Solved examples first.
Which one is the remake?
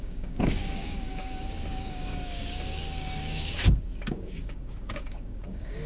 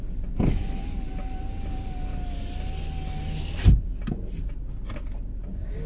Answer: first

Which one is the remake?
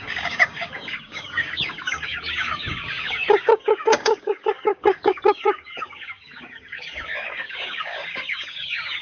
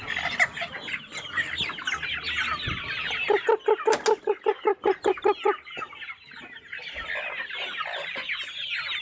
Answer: first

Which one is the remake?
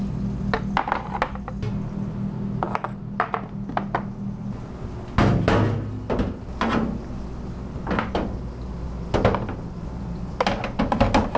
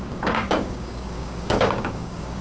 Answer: second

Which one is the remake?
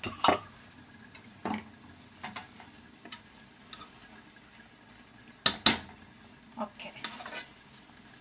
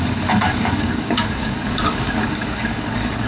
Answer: second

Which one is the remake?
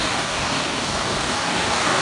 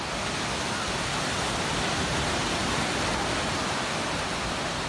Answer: first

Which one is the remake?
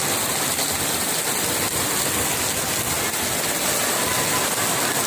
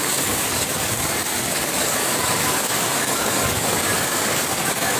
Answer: second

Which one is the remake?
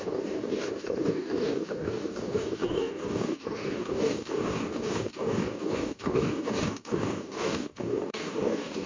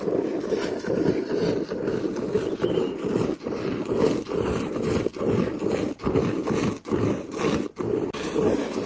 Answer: first